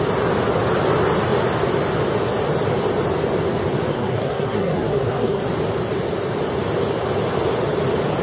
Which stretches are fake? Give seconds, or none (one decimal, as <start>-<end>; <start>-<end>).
3.9-5.4